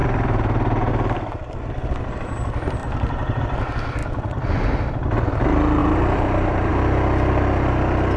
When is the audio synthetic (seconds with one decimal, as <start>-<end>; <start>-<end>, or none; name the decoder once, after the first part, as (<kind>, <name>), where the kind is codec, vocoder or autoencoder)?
0.0-0.9 (vocoder, BigVGAN v2); 2.8-3.4; 5.8-6.7